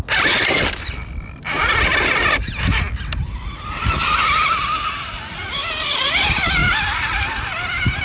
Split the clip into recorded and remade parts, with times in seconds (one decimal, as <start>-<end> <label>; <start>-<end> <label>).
0.0-8.0 recorded